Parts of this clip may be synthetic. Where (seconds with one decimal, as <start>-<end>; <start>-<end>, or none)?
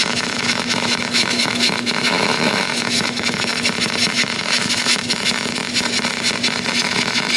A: 0.0-3.5; 4.1-5.6; 6.7-7.4